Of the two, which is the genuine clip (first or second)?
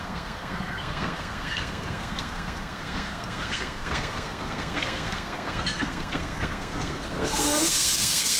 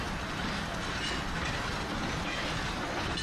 second